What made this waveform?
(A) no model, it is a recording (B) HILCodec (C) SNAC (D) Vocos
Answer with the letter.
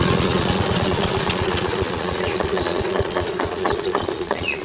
D